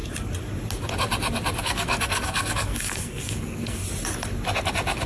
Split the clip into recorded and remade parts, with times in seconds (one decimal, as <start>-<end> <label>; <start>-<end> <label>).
0.0-1.6 recorded; 1.6-3.8 remade; 3.8-5.1 recorded